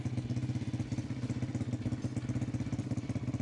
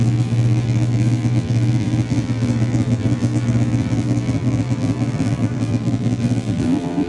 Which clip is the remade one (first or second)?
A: second